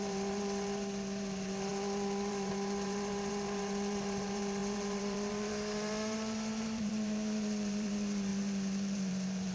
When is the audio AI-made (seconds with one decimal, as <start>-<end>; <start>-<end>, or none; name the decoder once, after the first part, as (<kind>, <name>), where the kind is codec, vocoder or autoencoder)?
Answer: 0.0-9.5 (vocoder, BigVGAN v2)